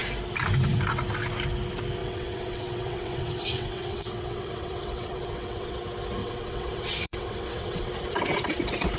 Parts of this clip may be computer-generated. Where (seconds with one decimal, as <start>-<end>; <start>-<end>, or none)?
2.0-5.8; 6.2-7.9